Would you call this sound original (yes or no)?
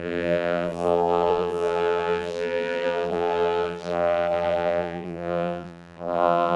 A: no